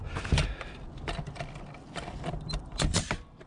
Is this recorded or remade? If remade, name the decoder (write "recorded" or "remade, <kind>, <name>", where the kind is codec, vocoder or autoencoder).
recorded